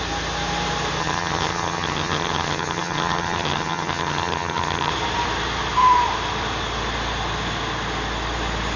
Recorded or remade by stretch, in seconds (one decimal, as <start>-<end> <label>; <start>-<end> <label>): 0.0-1.0 recorded; 1.0-4.9 remade; 4.9-8.8 recorded